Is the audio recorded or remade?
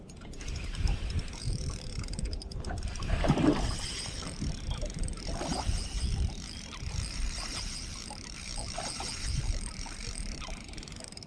remade